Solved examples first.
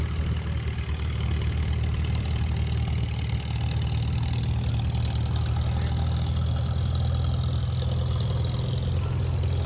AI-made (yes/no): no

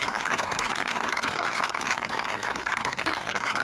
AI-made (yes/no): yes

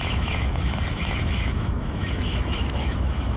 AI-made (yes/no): yes